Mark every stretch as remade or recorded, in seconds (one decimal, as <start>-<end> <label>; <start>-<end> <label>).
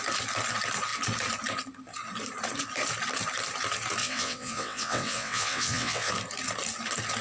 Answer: 0.0-4.0 recorded; 4.0-6.1 remade; 6.1-7.2 recorded